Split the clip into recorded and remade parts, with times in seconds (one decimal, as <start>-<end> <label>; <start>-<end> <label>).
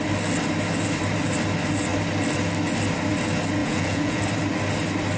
0.0-3.6 recorded; 3.6-4.2 remade; 4.2-5.2 recorded